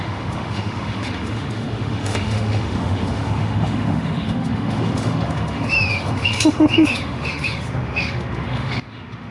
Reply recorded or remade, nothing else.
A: remade